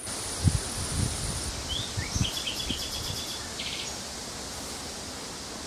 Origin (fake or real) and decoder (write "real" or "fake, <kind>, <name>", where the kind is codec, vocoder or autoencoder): real